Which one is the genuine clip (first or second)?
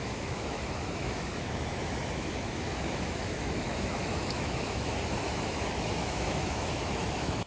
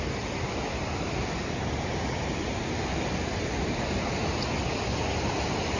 second